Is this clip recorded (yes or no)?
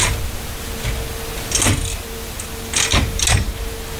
yes